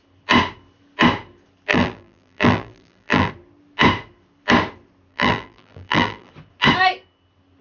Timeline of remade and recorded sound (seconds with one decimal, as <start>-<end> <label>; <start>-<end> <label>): 0.0-1.7 recorded; 1.7-3.3 remade; 3.3-5.1 recorded; 5.1-6.3 remade; 6.3-7.6 recorded